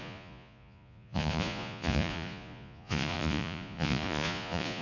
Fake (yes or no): yes